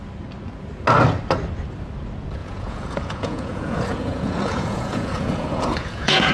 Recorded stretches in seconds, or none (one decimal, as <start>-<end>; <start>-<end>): 0.0-2.4